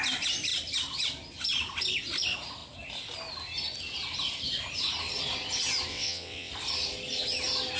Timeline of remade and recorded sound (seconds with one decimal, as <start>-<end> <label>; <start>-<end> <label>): 0.0-5.9 recorded; 5.9-6.5 remade; 6.5-7.8 recorded